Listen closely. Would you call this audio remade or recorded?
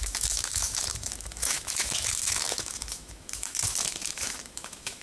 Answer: remade